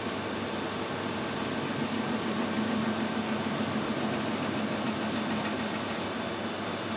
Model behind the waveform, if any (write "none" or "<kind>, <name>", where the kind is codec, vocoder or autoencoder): none